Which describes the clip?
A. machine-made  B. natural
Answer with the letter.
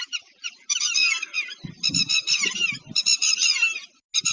B